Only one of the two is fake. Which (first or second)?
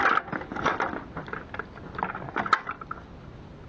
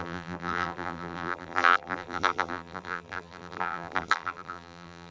second